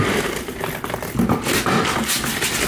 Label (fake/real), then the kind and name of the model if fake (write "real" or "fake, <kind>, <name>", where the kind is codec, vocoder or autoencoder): real